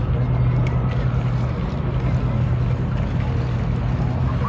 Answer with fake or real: real